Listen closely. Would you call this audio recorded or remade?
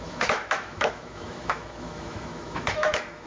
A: remade